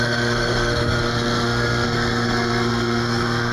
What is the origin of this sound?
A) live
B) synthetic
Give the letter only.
B